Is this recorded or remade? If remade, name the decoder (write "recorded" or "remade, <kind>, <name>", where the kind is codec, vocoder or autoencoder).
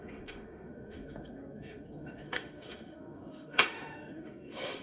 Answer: remade, autoencoder, DAC-VAE